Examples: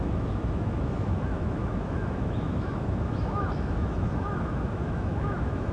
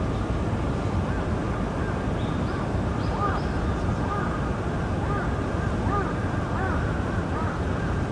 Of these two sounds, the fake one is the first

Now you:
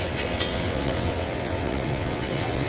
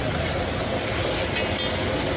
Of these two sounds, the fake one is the first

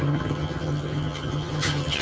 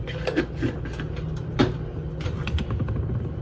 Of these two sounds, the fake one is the first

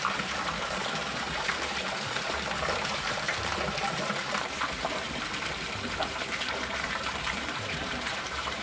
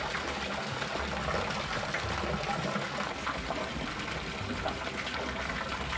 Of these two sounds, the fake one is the first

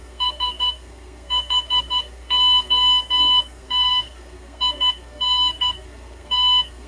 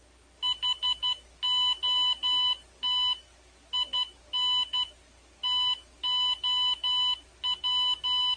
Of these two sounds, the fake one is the first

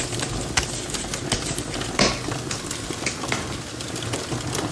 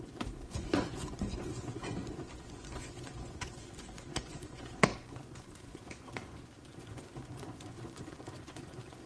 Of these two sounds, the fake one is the second